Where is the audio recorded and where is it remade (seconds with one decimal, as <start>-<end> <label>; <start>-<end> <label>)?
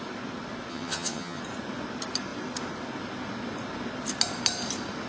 0.0-0.7 recorded; 0.7-1.4 remade; 1.4-5.1 recorded